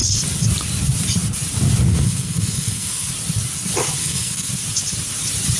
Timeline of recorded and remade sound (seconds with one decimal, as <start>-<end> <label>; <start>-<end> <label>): 0.0-1.9 recorded; 1.9-3.1 remade; 3.1-4.0 recorded; 4.0-4.5 remade; 4.5-5.6 recorded